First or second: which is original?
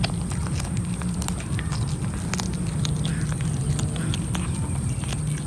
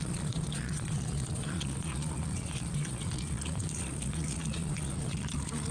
first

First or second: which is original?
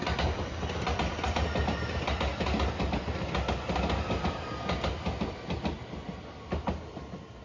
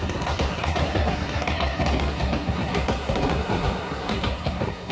first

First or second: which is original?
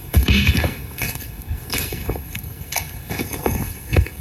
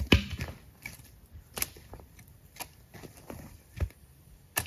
second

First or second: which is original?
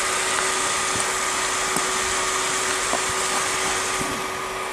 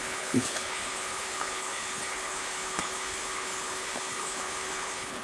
first